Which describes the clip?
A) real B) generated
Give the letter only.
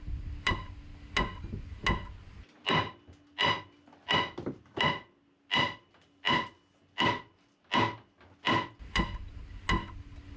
A